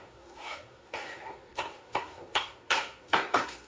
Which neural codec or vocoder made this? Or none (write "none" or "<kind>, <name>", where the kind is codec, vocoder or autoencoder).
codec, SNAC